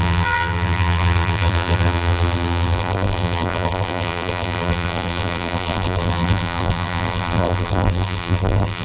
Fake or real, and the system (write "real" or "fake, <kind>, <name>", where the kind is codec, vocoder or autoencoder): fake, vocoder, BigVGAN v2